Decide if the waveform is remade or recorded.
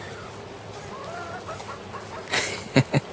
recorded